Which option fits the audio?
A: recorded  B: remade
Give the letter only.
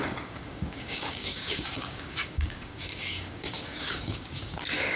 B